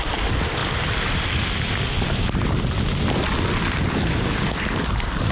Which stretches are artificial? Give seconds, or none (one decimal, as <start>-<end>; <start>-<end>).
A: none